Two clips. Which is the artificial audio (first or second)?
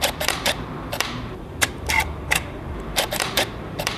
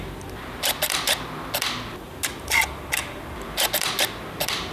first